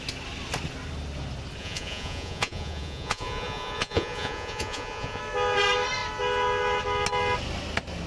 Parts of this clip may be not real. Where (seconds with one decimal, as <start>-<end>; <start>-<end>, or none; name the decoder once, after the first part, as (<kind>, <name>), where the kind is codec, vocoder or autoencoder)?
1.6-5.2 (vocoder, Vocos)